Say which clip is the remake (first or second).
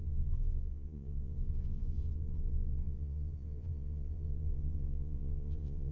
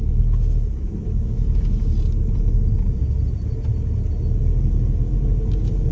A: first